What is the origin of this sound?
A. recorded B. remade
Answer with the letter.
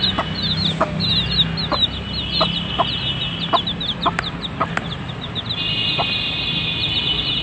A